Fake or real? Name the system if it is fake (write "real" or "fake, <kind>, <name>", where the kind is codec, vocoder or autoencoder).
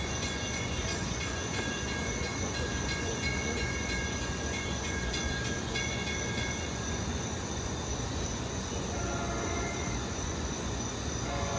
fake, vocoder, Vocos